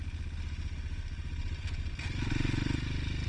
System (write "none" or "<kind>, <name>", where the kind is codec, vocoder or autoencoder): none